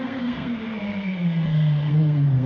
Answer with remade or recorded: remade